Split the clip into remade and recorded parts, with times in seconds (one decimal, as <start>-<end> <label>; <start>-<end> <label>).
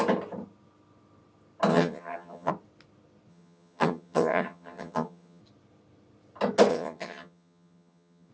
0.0-1.7 recorded; 1.7-2.5 remade; 2.5-3.3 recorded; 3.3-5.4 remade; 5.4-6.7 recorded; 6.7-8.3 remade